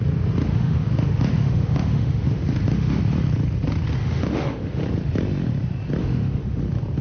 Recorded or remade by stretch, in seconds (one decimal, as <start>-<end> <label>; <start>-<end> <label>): 0.0-0.5 recorded; 0.5-3.0 remade; 3.0-4.0 recorded; 4.0-4.8 remade; 4.8-6.0 recorded; 6.0-6.6 remade; 6.6-7.0 recorded